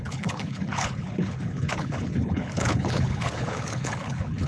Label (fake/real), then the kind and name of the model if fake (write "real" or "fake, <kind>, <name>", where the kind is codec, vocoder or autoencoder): fake, codec, HILCodec